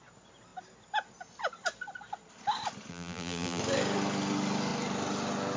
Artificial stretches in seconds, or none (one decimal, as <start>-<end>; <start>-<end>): 2.9-3.6